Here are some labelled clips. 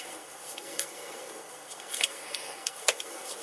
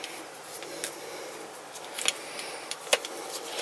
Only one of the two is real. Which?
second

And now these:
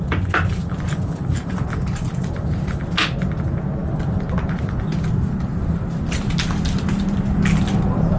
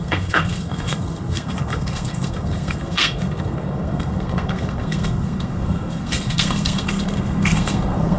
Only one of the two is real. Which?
first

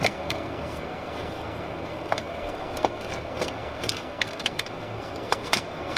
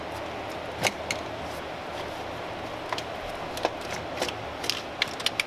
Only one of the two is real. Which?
second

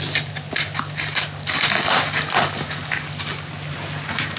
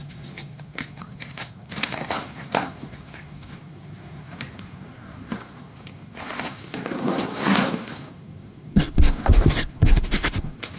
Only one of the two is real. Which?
first